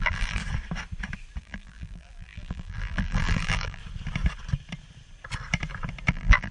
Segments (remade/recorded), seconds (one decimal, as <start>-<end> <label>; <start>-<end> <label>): 0.0-0.4 remade; 0.4-1.4 recorded; 1.4-3.8 remade; 3.8-6.1 recorded; 6.1-6.5 remade